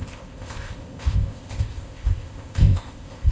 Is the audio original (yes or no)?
no